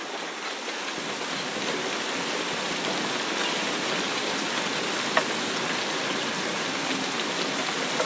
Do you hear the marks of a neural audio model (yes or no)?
no